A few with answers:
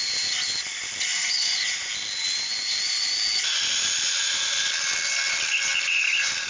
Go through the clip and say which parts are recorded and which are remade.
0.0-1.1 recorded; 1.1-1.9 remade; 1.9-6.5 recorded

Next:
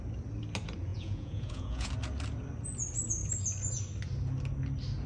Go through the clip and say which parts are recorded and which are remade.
0.0-0.9 recorded; 0.9-1.9 remade; 1.9-5.1 recorded